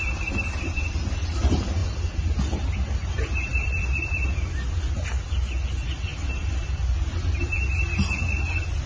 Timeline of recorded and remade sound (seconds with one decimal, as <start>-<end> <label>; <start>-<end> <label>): 0.0-8.9 recorded